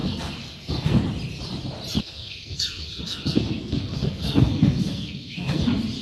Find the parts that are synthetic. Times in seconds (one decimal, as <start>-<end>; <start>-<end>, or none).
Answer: 0.0-1.0; 2.0-5.6